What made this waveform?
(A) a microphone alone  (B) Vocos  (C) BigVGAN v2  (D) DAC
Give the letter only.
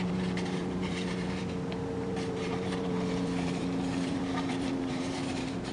C